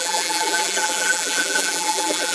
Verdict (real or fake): fake